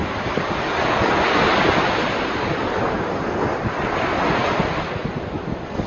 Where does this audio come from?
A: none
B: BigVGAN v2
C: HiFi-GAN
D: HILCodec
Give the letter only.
A